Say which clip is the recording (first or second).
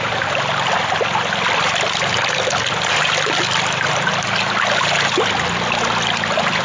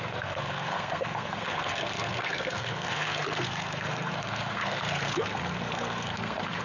first